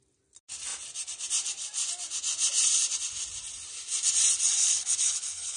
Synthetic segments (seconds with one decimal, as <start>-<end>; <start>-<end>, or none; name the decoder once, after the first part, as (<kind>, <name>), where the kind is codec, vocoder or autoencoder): 4.6-5.6 (codec, HILCodec)